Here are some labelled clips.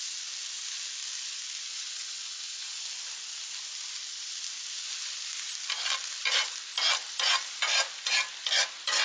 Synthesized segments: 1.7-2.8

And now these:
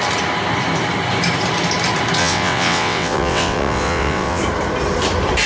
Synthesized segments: 2.2-4.4

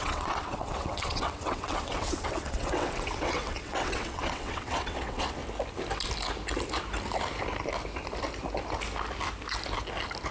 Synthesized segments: 0.0-5.4